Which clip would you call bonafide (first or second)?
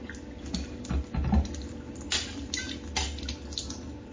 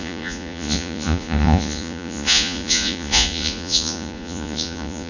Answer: first